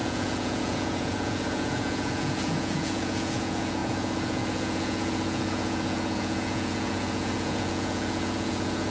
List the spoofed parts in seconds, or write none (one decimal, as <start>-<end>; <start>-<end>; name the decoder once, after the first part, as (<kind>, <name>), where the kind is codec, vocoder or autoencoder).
0.0-8.9 (vocoder, Vocos)